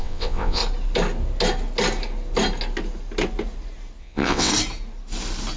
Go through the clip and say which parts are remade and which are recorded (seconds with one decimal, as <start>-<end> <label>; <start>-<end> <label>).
0.0-0.6 remade; 0.6-4.0 recorded; 4.0-4.5 remade; 4.5-5.6 recorded